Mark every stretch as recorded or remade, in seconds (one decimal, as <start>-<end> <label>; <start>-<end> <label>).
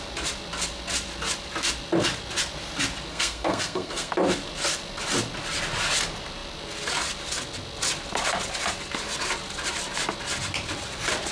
0.0-3.1 recorded; 3.1-4.1 remade; 4.1-11.3 recorded